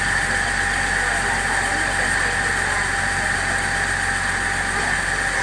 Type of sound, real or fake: real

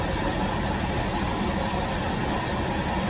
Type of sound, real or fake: real